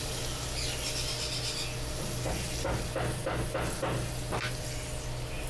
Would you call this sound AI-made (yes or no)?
no